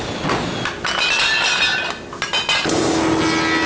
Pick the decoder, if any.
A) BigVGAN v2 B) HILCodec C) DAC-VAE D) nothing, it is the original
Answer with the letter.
D